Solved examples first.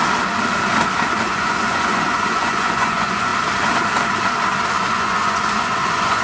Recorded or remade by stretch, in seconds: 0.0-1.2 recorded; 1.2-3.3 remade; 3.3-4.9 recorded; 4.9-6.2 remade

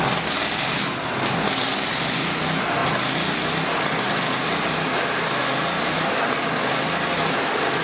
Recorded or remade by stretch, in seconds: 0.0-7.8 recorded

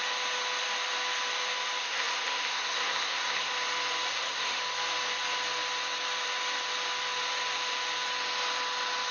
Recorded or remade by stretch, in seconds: 0.0-1.8 recorded; 1.8-3.5 remade; 3.5-4.1 recorded; 4.1-4.6 remade; 4.6-9.1 recorded

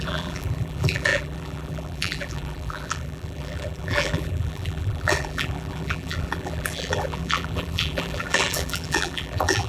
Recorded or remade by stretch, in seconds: 0.0-9.7 remade

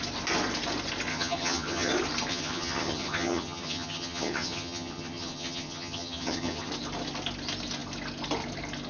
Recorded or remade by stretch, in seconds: 0.0-1.1 recorded; 1.1-1.9 remade; 1.9-2.3 recorded; 2.3-6.7 remade; 6.7-8.9 recorded